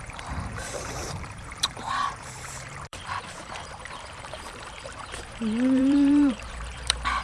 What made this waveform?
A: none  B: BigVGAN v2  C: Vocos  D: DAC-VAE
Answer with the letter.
B